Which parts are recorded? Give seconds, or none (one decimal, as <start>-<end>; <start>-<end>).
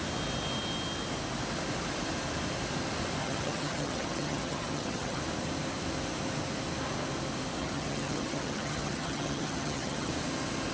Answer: 0.0-3.2; 5.2-7.6; 10.1-10.7